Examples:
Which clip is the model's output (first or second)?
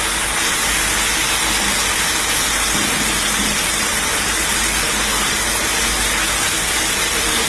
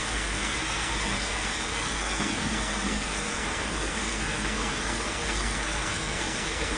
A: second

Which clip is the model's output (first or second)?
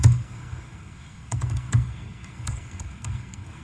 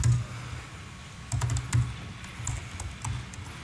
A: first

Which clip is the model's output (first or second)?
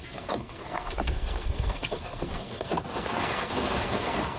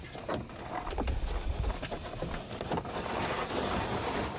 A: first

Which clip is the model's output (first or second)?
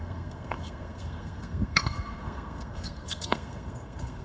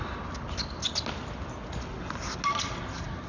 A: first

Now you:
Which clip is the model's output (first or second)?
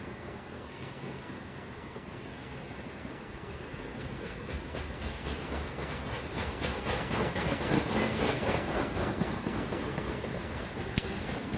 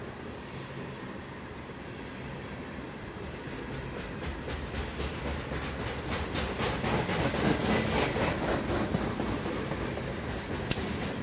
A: first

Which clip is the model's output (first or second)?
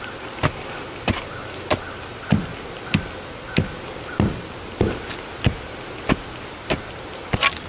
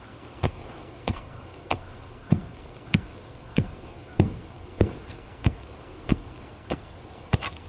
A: second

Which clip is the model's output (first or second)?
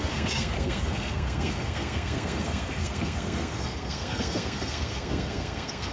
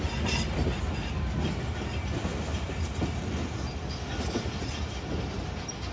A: first